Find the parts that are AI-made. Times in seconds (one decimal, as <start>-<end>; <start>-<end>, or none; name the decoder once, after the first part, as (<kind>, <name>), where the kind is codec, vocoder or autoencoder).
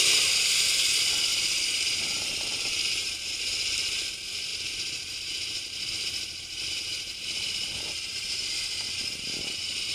1.3-2.0 (vocoder, BigVGAN v2)